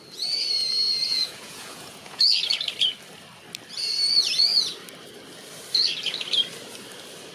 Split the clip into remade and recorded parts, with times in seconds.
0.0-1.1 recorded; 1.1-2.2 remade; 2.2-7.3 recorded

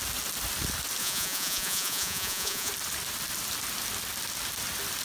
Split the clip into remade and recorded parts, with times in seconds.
0.0-1.0 recorded; 1.0-2.7 remade; 2.7-5.0 recorded